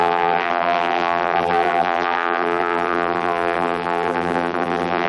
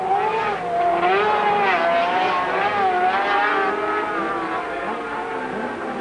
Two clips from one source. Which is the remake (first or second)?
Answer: first